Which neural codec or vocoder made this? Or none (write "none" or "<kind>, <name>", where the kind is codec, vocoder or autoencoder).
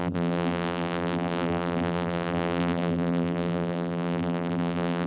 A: vocoder, BigVGAN v2